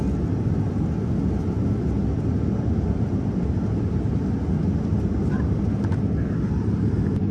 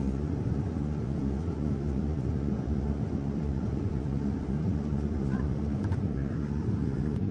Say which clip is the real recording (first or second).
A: first